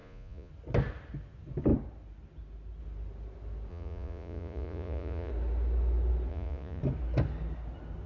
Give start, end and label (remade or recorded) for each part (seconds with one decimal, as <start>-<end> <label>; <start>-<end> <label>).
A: 0.0-0.5 remade; 0.5-3.7 recorded; 3.7-5.3 remade; 5.3-6.3 recorded; 6.3-6.8 remade; 6.8-8.1 recorded